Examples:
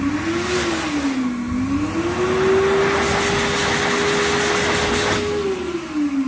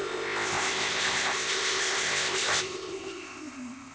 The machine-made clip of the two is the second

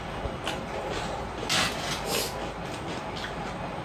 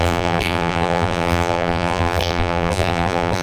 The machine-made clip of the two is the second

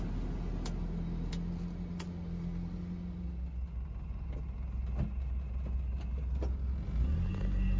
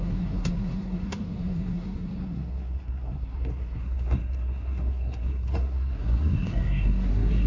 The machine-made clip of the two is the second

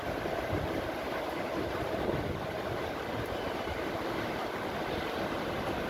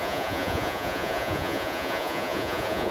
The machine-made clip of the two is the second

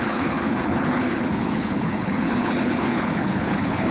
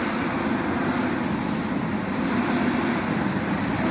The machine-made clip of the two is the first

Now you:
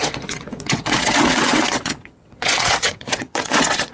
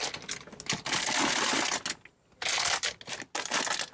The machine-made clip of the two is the first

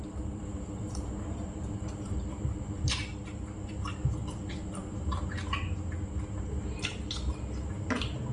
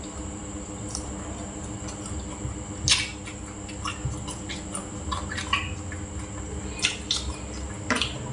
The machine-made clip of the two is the first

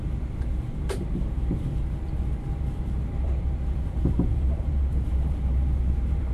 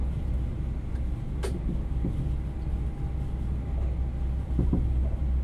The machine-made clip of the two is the first